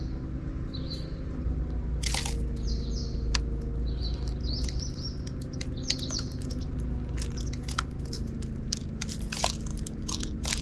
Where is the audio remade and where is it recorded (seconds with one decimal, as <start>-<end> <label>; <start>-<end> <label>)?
0.0-9.7 recorded; 9.7-10.6 remade